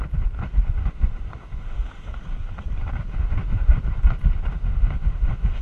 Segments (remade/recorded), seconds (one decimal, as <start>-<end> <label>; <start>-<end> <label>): 0.0-0.8 recorded; 0.8-2.2 remade; 2.2-3.1 recorded; 3.1-3.8 remade; 3.8-4.5 recorded; 4.5-5.6 remade